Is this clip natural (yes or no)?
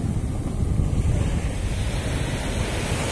yes